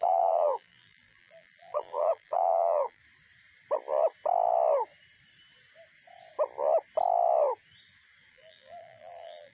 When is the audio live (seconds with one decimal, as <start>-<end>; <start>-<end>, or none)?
3.0-8.3